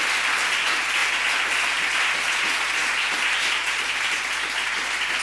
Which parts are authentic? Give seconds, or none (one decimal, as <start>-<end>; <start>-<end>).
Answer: 0.0-1.0; 2.4-2.8; 4.2-5.2